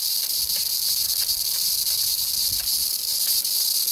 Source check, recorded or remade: recorded